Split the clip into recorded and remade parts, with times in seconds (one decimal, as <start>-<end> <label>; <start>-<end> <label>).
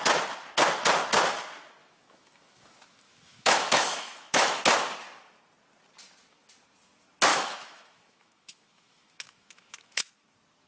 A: 0.0-1.8 recorded; 1.8-4.6 remade; 4.6-7.3 recorded; 7.3-10.1 remade; 10.1-10.7 recorded